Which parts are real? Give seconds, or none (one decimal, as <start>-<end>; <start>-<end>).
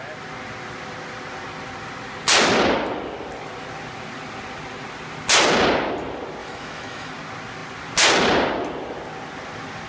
0.0-6.4; 7.1-9.9